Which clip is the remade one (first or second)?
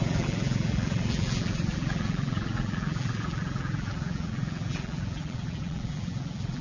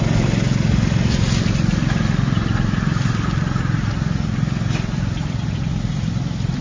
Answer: first